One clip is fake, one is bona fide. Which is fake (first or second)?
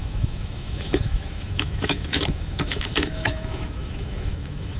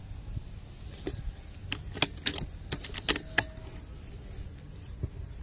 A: first